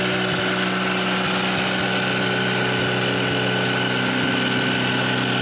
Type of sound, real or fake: real